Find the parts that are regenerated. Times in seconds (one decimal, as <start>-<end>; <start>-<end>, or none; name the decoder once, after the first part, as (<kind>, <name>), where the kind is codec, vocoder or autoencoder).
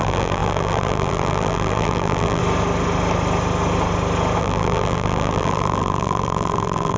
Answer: 0.0-2.4 (vocoder, BigVGAN v2); 4.4-7.0